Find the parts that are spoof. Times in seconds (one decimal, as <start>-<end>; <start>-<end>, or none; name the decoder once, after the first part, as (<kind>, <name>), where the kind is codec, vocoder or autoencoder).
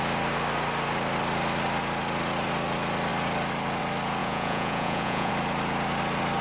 4.2-5.3 (vocoder, Vocos)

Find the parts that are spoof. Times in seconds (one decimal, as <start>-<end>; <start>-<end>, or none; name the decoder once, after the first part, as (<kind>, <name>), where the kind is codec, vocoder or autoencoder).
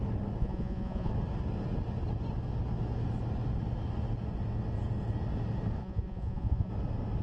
0.4-1.1 (vocoder, Vocos); 5.8-6.7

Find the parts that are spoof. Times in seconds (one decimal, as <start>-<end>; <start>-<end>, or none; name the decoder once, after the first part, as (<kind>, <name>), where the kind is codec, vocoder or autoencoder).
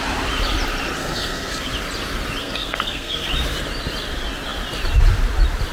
1.0-1.7 (codec, SNAC); 2.4-3.3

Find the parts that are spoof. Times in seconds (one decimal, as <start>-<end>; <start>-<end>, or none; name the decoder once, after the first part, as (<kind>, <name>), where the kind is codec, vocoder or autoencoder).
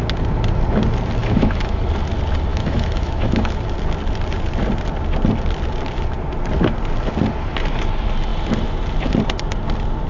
1.2-1.8 (autoencoder, DAC-VAE); 2.5-3.6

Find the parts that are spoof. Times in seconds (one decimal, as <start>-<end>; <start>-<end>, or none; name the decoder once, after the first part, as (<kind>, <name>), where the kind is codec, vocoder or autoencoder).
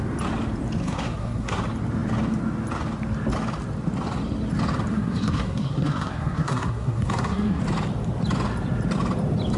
0.8-1.6 (codec, SNAC); 4.9-7.6